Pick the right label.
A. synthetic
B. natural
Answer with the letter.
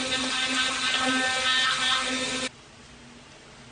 B